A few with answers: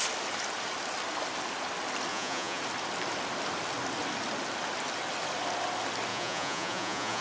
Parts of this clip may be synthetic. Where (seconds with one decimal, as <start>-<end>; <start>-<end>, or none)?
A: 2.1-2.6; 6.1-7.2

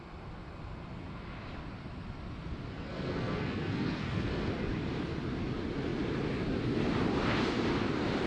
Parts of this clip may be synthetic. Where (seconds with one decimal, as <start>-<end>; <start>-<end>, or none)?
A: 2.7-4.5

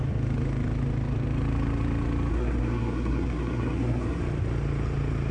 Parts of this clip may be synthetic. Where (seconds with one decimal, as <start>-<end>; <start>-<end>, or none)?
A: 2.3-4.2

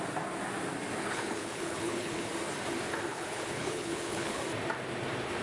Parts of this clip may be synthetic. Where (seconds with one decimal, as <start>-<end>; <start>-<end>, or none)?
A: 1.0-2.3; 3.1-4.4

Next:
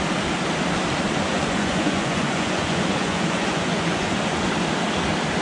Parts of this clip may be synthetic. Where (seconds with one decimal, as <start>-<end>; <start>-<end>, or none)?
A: 1.3-4.5

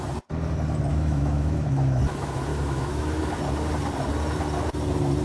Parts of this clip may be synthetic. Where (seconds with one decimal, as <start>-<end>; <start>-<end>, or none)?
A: 0.9-2.0; 2.5-3.2

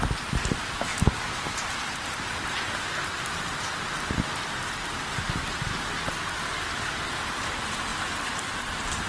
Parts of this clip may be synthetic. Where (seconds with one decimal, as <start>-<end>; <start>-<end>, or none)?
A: 0.9-1.7; 7.9-9.1